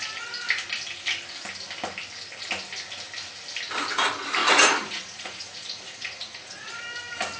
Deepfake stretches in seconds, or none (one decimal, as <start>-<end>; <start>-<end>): 4.4-6.8